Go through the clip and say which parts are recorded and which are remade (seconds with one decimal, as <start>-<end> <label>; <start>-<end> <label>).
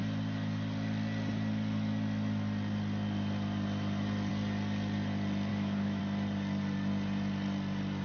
0.0-5.5 recorded; 5.5-6.0 remade; 6.0-8.0 recorded